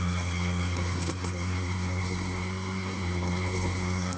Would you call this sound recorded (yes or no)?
no